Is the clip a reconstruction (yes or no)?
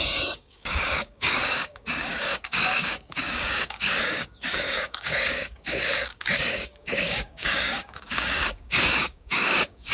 yes